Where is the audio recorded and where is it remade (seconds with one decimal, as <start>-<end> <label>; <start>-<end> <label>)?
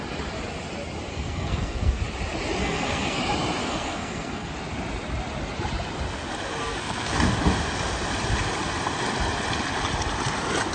0.0-1.1 recorded; 1.1-2.0 remade; 2.0-2.6 recorded; 2.6-3.2 remade; 3.2-3.6 recorded; 3.6-4.5 remade; 4.5-6.6 recorded; 6.6-7.2 remade; 7.2-10.7 recorded